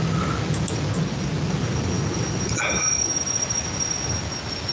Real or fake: real